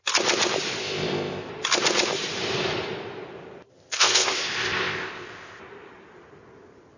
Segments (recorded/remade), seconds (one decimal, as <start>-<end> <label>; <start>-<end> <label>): 0.0-0.8 recorded; 0.8-1.5 remade; 1.5-3.7 recorded; 3.7-5.6 remade; 5.6-7.0 recorded